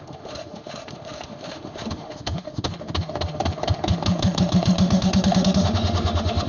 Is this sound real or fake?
fake